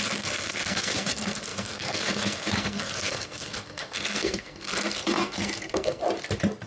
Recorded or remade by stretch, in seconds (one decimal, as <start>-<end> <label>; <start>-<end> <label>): 0.0-6.0 remade; 6.0-6.7 recorded